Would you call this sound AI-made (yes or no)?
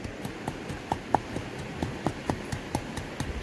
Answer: no